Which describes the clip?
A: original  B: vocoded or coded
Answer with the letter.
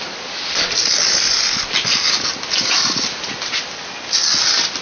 A